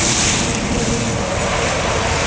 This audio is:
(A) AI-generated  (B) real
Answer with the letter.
B